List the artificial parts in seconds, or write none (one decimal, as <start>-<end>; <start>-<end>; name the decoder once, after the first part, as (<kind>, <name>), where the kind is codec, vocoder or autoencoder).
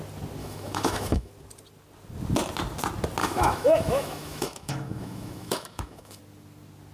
0.4-1.3 (autoencoder, DAC-VAE); 3.2-6.2